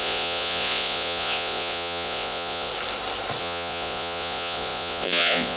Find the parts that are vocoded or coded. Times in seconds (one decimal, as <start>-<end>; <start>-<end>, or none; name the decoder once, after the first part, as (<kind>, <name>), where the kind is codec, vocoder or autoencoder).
0.0-2.7 (vocoder, Vocos); 3.4-5.6